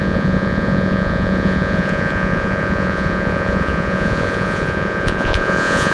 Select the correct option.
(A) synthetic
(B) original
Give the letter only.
A